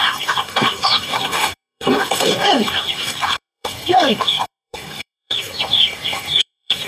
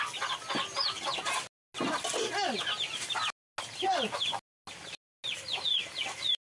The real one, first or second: second